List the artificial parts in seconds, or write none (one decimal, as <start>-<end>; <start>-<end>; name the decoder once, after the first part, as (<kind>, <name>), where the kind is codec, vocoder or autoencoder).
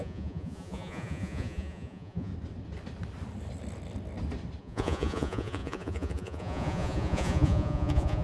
0.0-2.3 (vocoder, Vocos); 4.6-8.2